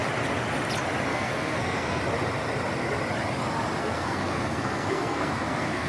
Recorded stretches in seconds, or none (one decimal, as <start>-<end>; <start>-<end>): 0.0-1.1; 2.0-3.8